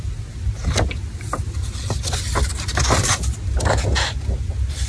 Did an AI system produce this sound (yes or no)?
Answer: no